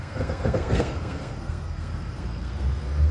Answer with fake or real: fake